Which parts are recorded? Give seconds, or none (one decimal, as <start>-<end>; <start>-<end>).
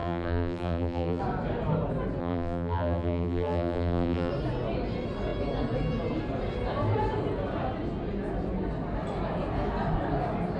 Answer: 1.2-2.2; 4.3-10.6